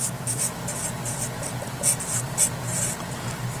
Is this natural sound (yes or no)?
yes